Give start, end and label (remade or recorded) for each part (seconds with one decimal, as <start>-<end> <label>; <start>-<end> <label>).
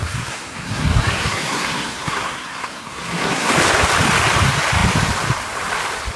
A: 0.0-3.5 remade; 3.5-6.2 recorded